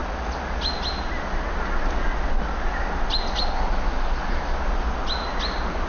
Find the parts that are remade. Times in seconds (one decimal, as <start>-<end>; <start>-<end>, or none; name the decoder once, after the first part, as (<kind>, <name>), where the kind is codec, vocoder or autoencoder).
none